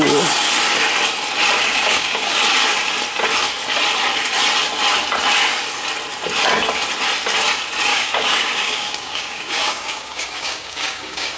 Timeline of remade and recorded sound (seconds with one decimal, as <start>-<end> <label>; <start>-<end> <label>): 0.0-1.7 recorded; 1.7-2.4 remade; 2.4-7.9 recorded; 7.9-11.4 remade